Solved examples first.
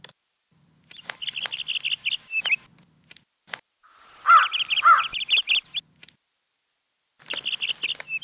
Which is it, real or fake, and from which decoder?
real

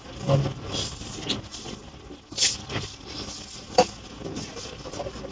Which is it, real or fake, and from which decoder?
real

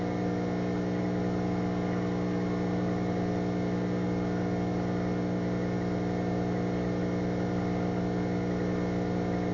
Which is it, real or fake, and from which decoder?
real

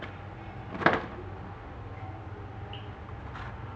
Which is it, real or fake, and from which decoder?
real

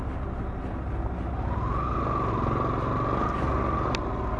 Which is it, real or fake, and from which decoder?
real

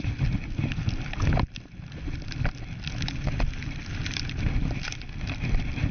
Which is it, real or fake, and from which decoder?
real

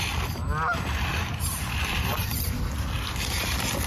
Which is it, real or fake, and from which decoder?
real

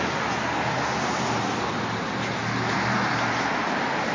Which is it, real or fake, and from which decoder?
real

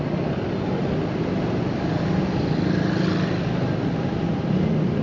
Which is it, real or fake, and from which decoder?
real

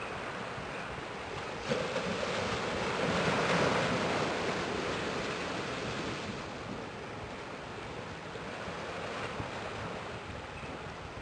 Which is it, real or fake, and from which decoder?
real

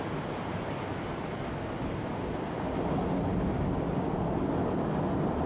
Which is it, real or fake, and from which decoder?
real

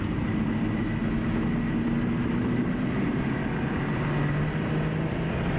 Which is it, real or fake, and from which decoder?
real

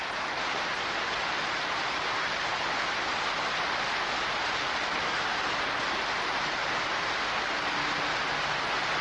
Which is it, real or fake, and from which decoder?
real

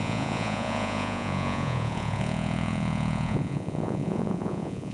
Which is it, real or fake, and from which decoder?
fake, vocoder, Vocos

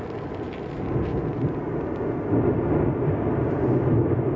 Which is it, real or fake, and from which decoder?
real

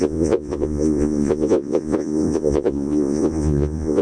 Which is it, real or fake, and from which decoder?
fake, vocoder, Vocos